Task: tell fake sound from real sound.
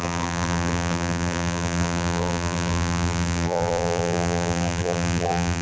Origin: fake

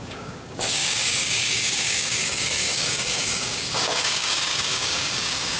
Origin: fake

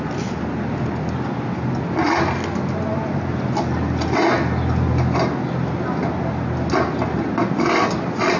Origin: real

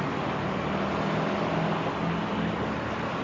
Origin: real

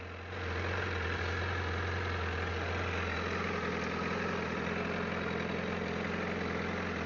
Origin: real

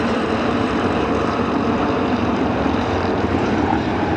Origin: fake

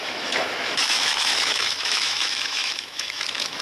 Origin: fake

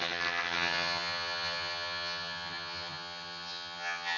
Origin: fake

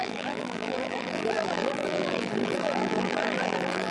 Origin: fake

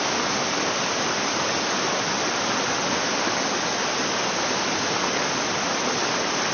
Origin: real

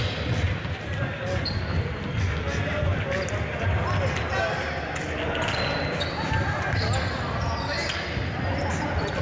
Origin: real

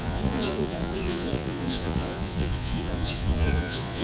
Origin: fake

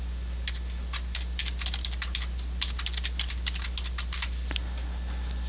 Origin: real